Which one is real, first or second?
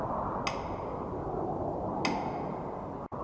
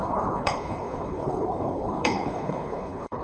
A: first